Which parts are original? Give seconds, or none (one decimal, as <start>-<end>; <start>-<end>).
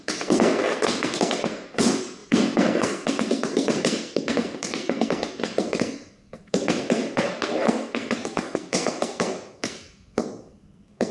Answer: none